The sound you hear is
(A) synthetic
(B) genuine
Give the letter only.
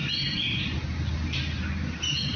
B